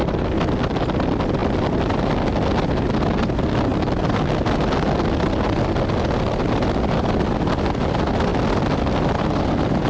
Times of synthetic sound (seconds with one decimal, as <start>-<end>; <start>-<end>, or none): none